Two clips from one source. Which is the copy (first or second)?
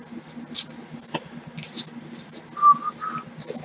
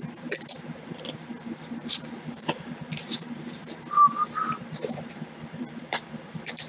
second